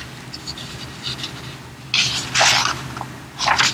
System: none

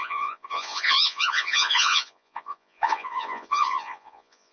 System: vocoder, Vocos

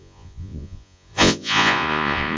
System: vocoder, Vocos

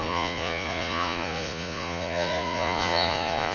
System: vocoder, Vocos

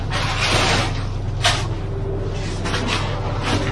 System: none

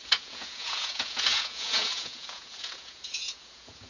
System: vocoder, Vocos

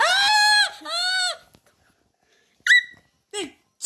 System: none